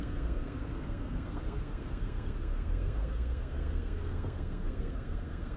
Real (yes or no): no